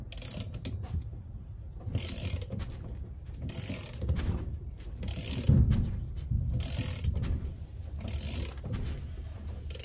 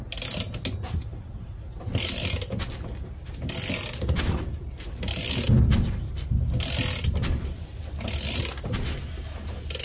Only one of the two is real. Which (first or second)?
second